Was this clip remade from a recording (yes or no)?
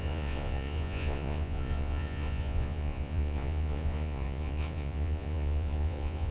yes